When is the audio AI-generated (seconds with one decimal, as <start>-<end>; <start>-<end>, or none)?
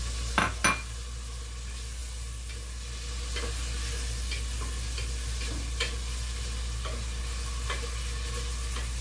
none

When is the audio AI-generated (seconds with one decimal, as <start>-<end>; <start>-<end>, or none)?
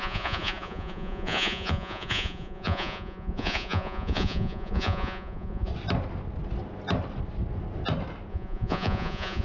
0.0-5.7; 8.3-9.4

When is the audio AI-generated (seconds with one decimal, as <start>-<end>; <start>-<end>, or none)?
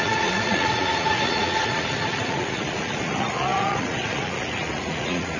0.0-5.4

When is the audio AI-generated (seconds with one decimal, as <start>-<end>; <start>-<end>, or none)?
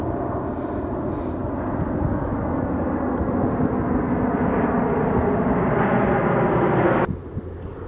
none